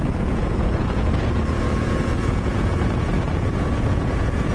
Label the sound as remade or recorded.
remade